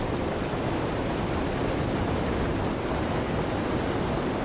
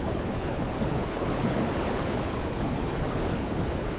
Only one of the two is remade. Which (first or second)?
second